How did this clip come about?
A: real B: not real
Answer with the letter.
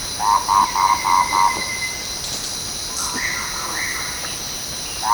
A